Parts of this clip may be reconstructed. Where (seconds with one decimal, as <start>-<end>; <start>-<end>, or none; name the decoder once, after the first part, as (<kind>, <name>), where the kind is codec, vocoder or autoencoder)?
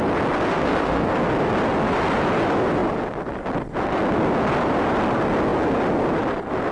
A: 0.5-1.1 (codec, SNAC)